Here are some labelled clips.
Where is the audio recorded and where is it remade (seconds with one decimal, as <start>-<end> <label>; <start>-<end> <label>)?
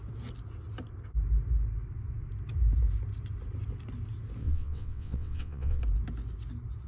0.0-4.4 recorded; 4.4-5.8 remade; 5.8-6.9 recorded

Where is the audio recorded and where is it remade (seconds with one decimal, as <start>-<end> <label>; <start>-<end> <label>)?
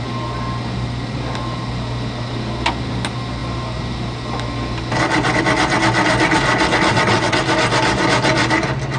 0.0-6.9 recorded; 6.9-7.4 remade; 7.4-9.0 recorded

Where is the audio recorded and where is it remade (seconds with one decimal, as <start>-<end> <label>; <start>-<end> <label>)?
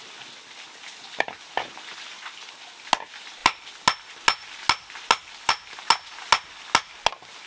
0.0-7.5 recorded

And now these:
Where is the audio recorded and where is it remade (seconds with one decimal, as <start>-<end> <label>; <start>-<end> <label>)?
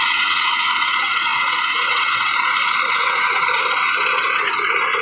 0.0-2.3 remade; 2.3-2.9 recorded; 2.9-3.4 remade; 3.4-5.0 recorded